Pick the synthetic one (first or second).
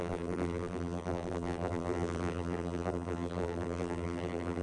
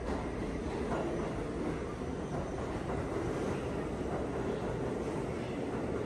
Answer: first